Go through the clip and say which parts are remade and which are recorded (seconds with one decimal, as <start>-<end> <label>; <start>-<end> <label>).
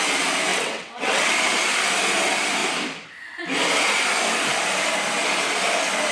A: 0.0-0.5 recorded; 0.5-1.3 remade; 1.3-6.1 recorded